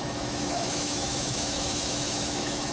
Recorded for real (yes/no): no